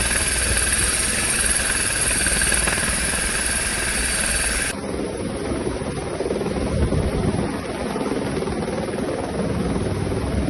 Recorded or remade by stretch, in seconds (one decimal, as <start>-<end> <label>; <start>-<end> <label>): 0.0-10.5 recorded

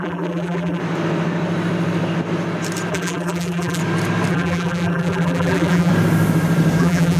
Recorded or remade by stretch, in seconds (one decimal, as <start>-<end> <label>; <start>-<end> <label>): 0.0-0.8 remade; 0.8-2.9 recorded; 2.9-3.8 remade; 3.8-4.3 recorded; 4.3-5.9 remade; 5.9-6.8 recorded; 6.8-7.2 remade

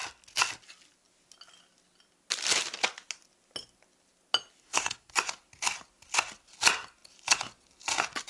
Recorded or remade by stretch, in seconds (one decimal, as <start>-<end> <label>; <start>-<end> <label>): 0.0-4.6 recorded; 4.6-5.1 remade; 5.1-8.3 recorded